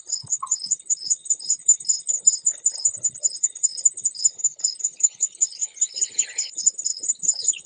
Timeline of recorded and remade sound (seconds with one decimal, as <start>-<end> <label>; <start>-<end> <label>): 0.0-7.7 remade